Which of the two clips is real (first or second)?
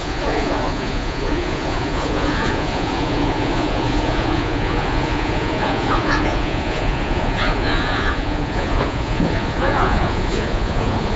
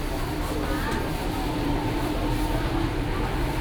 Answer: second